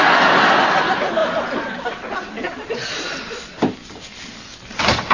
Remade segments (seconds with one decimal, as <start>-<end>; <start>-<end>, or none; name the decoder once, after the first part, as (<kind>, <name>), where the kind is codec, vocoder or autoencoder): none